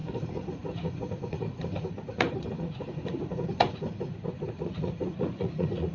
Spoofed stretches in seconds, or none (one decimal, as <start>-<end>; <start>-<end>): 0.0-5.9